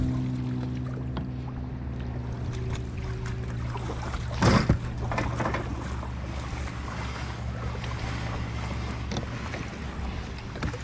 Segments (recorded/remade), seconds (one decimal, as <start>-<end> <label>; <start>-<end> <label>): 0.0-10.8 recorded